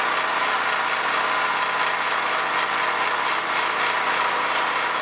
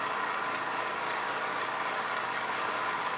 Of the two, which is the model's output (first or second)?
second